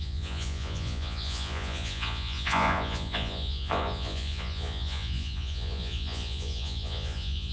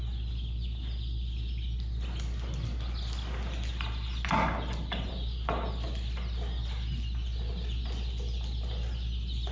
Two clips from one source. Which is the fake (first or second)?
first